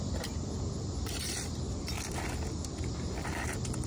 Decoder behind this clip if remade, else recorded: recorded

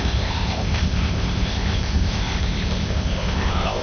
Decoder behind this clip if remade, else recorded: remade, codec, ZipCodec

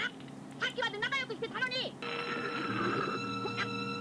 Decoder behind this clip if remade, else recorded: recorded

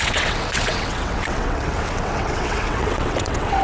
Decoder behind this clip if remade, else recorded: remade, vocoder, WaveNeXt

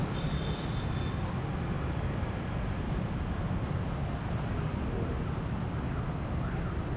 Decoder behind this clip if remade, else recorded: recorded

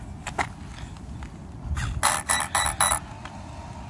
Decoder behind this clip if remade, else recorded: recorded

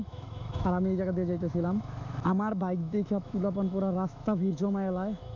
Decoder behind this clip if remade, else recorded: remade, autoencoder, DAC-VAE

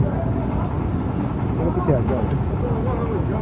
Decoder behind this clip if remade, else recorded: recorded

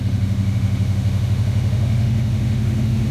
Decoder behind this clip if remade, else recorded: remade, autoencoder, DAC-VAE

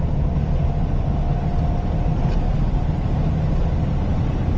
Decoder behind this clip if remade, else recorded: recorded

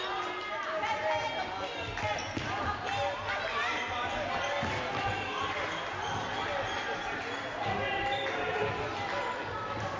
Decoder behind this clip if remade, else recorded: recorded